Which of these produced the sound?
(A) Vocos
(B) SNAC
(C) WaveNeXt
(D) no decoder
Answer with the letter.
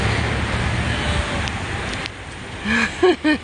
D